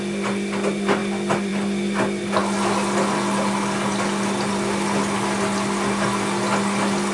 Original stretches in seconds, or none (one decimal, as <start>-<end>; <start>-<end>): 0.0-7.1